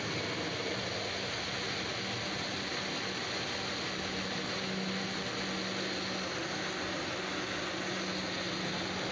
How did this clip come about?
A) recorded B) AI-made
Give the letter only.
A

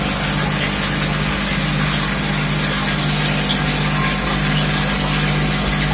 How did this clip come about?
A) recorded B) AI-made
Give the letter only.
A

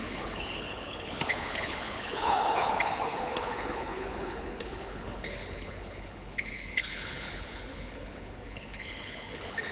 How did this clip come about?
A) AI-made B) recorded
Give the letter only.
A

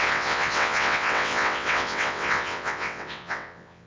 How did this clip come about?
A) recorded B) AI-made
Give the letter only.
B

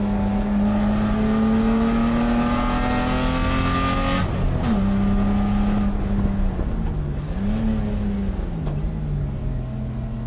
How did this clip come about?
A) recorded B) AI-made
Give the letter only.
A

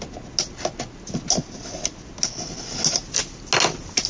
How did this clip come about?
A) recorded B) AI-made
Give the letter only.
A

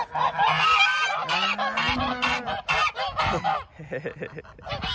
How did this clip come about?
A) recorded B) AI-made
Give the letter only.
A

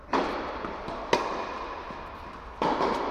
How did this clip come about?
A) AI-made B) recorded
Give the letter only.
B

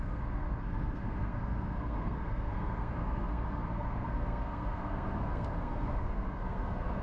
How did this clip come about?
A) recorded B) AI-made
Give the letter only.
B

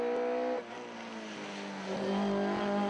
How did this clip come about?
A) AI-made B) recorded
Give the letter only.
B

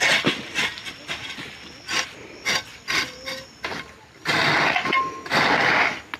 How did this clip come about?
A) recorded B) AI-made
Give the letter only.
A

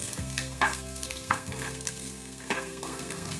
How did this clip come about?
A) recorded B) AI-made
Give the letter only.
B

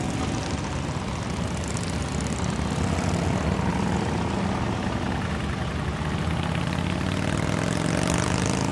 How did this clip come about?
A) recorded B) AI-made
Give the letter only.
A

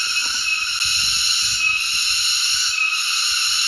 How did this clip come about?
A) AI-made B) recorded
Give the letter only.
B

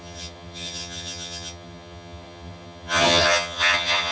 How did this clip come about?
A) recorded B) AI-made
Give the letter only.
B